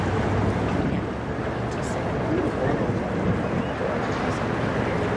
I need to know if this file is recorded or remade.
recorded